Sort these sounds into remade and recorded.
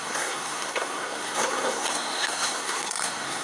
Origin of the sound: remade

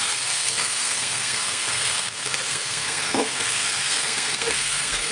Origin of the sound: remade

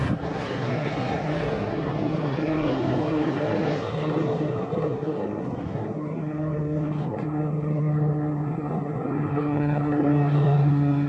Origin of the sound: remade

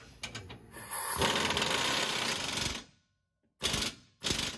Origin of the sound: recorded